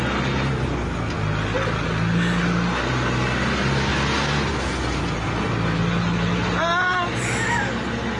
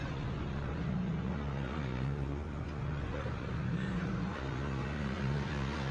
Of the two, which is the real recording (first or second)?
first